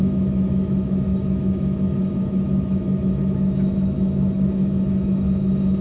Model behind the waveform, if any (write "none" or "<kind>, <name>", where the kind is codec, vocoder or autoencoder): autoencoder, DAC-VAE